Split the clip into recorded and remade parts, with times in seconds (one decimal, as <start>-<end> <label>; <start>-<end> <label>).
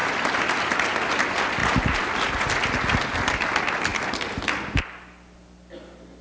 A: 0.0-6.2 recorded